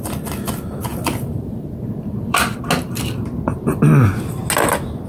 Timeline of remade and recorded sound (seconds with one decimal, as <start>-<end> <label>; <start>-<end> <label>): 0.0-0.9 recorded; 0.9-2.6 remade; 2.6-5.1 recorded